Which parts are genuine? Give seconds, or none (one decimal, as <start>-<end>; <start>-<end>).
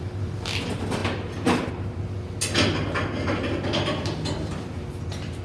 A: 0.0-5.4